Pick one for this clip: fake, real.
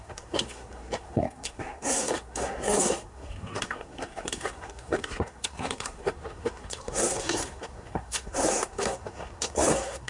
fake